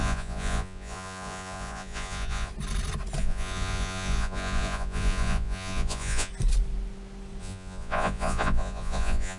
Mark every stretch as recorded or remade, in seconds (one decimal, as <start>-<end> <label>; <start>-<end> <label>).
0.0-2.5 remade; 2.5-3.2 recorded; 3.2-6.3 remade; 6.3-7.4 recorded; 7.4-9.4 remade